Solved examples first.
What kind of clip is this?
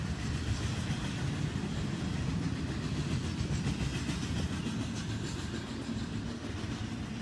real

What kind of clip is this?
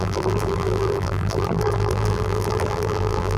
fake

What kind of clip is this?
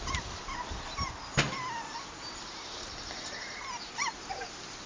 real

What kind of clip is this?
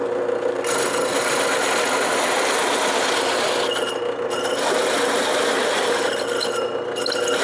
real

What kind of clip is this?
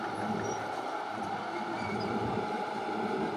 fake